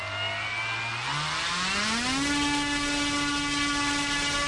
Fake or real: real